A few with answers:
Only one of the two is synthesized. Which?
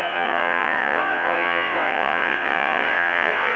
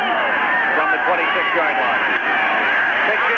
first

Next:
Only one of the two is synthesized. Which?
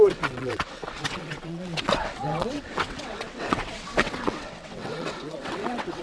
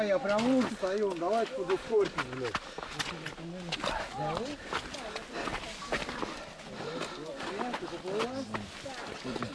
first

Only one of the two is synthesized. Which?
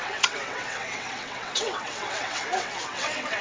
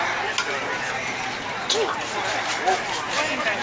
first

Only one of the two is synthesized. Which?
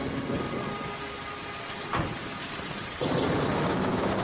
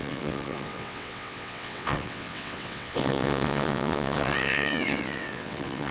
second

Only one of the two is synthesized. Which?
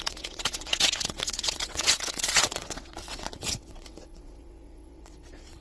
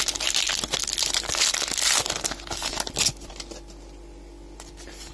first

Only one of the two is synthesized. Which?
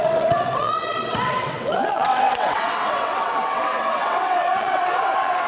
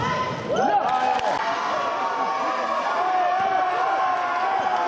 first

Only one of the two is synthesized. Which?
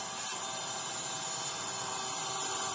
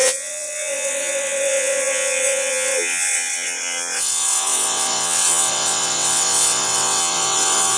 second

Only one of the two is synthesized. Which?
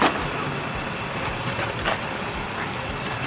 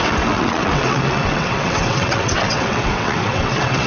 second